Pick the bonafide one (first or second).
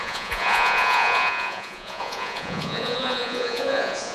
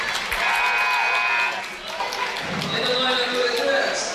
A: second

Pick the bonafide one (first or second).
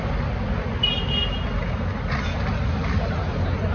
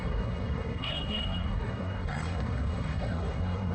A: first